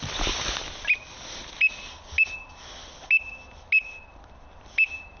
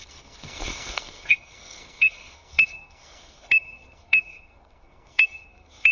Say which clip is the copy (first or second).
second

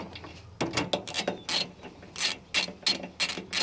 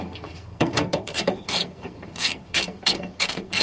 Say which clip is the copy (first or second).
second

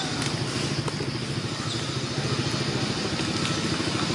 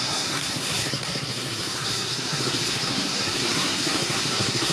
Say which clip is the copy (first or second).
second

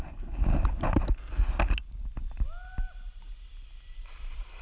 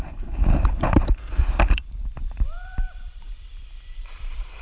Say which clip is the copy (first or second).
second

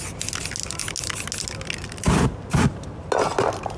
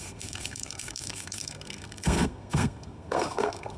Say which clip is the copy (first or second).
second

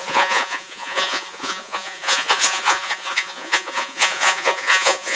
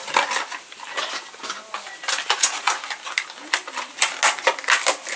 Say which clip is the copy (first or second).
first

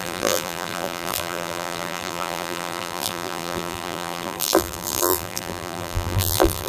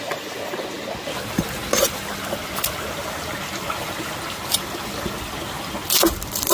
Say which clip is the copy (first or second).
first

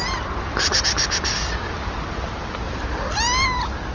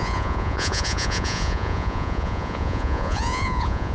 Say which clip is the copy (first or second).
second